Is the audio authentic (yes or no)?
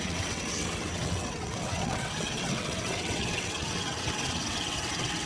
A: no